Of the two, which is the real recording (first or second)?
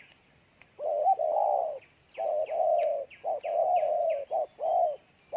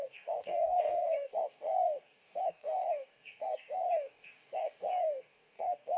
first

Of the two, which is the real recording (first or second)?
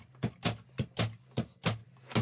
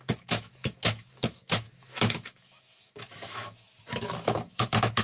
first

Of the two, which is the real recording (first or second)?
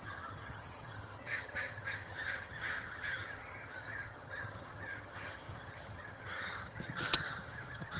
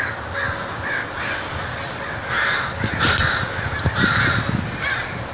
second